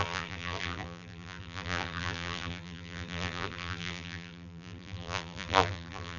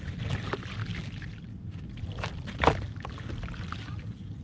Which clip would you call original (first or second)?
second